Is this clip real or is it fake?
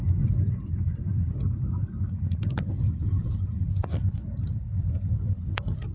fake